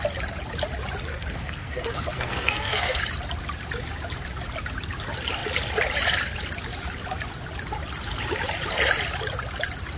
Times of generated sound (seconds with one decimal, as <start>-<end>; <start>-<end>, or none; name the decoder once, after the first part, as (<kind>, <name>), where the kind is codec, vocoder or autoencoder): 1.1-3.0 (codec, SNAC)